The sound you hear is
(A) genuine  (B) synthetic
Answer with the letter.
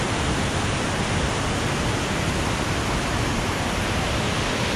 A